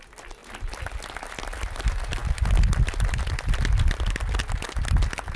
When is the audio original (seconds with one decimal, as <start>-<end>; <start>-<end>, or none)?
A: 0.0-5.4